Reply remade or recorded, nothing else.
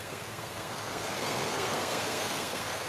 remade